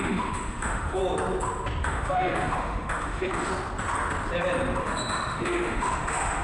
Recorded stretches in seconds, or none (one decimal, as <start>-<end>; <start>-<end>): 1.0-1.8; 3.5-4.8

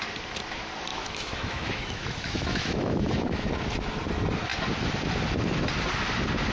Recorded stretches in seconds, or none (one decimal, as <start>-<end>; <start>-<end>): 0.0-0.9; 3.5-6.5

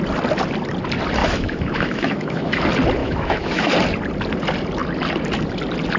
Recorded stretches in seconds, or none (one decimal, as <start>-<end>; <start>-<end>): 0.0-1.2; 2.6-3.0; 3.7-6.0

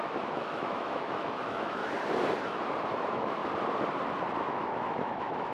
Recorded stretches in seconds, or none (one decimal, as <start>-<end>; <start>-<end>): 1.8-2.9; 3.4-4.5